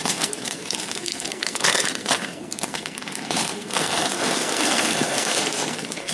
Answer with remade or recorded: remade